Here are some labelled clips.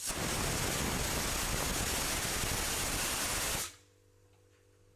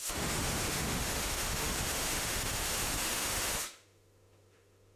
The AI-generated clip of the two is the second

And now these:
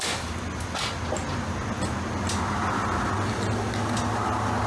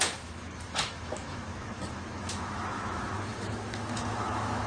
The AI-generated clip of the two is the second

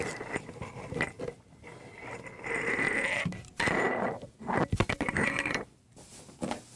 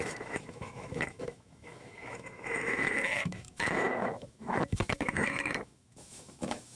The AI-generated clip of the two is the second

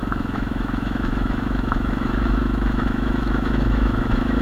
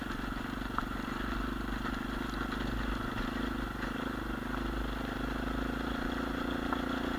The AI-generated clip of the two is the first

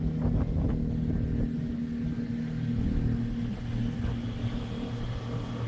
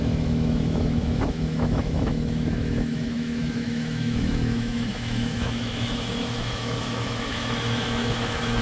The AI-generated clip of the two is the second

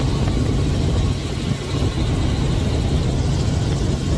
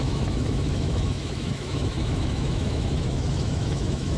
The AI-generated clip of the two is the second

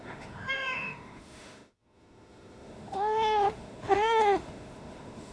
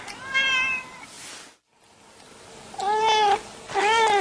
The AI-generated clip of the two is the first